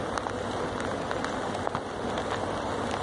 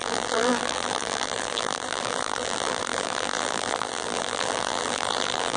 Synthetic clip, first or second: second